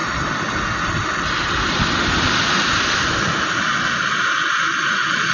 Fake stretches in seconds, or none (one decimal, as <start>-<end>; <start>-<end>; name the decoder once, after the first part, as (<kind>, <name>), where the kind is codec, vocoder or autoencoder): none